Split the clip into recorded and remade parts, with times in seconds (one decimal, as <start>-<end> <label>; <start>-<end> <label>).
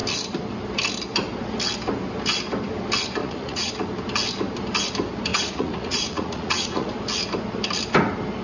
0.0-3.2 recorded; 3.2-3.7 remade; 3.7-5.3 recorded; 5.3-6.9 remade; 6.9-8.4 recorded